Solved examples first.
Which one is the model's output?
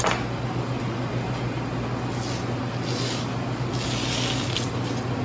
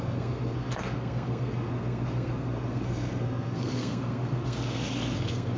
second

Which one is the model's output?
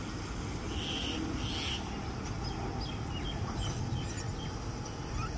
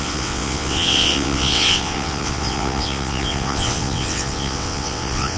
second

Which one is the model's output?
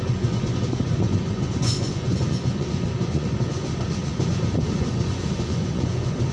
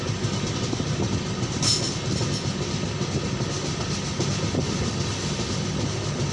first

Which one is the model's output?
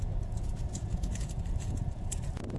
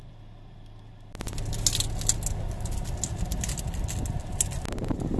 first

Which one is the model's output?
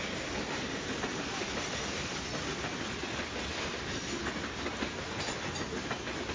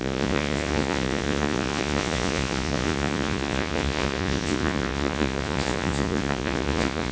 second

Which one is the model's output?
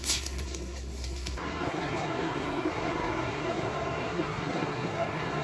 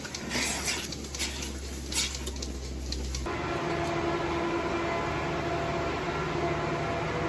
first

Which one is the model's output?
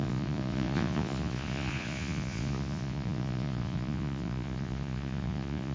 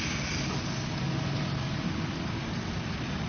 first